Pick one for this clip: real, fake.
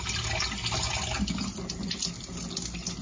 real